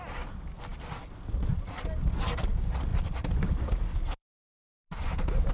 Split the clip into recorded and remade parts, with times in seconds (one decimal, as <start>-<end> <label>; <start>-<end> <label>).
0.0-2.9 recorded; 2.9-5.5 remade